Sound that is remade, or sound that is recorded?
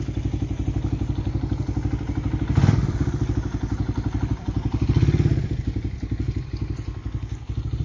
recorded